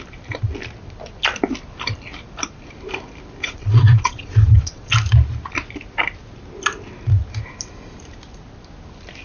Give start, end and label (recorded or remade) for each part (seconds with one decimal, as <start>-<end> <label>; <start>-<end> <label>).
0.0-3.4 recorded; 3.4-4.9 remade; 4.9-9.2 recorded